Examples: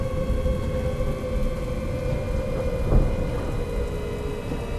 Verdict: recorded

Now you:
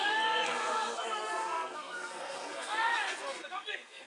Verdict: remade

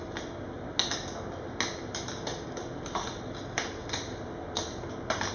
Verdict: recorded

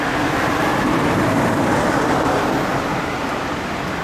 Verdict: recorded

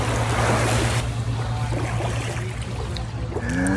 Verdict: recorded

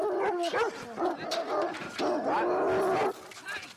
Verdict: recorded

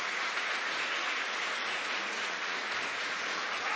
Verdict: remade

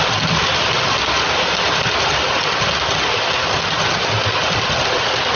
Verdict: recorded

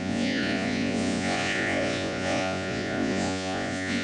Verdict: remade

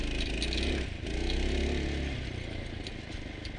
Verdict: recorded